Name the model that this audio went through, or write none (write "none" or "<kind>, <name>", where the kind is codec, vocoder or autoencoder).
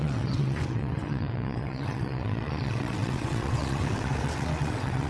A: vocoder, WaveNeXt